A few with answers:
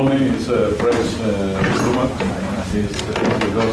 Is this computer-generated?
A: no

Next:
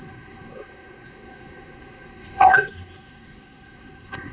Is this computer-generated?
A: yes